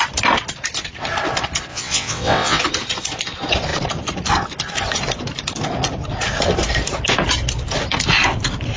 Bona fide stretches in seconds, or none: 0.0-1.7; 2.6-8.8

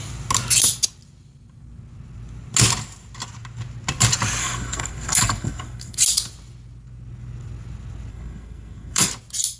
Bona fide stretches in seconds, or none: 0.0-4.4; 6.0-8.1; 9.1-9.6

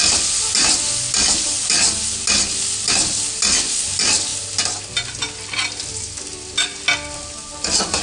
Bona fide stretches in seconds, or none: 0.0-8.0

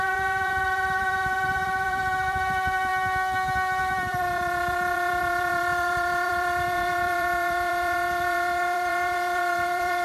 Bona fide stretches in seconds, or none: 2.9-3.8

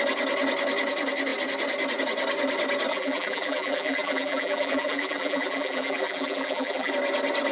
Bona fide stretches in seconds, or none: 0.0-2.9; 6.9-7.5

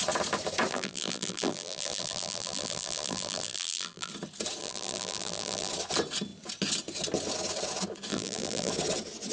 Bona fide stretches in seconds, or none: 0.0-0.7; 4.1-4.6; 5.7-8.1; 8.7-9.3

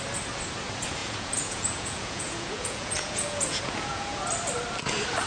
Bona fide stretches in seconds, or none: 0.0-1.0; 4.2-5.3

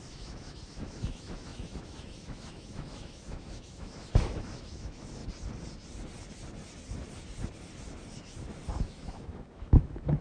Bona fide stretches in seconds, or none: 5.2-8.8